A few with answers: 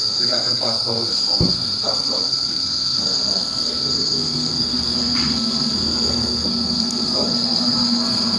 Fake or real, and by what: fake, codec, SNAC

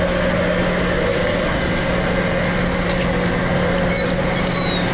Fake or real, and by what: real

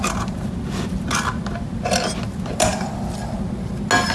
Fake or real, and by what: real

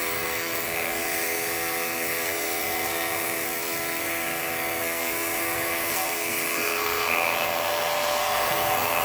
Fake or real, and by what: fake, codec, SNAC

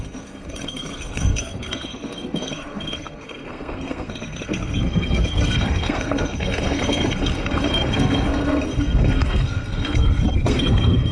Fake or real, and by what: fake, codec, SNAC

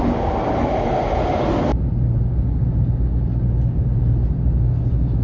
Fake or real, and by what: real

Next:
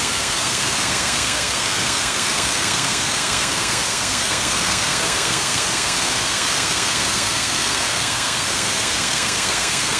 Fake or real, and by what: fake, codec, SNAC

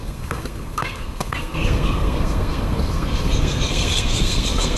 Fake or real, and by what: fake, codec, SNAC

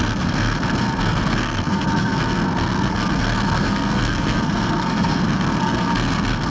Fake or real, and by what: fake, codec, SNAC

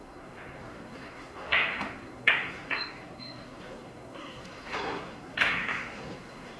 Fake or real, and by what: fake, codec, SNAC